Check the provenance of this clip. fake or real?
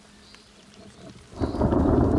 real